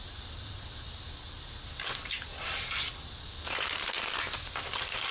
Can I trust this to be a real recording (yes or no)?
yes